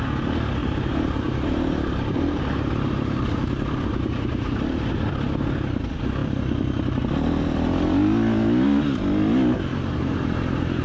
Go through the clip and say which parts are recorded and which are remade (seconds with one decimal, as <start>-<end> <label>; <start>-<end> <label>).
0.0-0.6 recorded; 0.6-5.1 remade; 5.1-6.2 recorded; 6.2-7.0 remade; 7.0-9.7 recorded; 9.7-10.8 remade